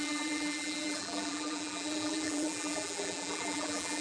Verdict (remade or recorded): remade